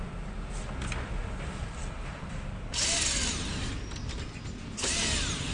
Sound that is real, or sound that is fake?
real